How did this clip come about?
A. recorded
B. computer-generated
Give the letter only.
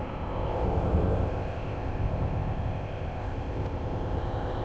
B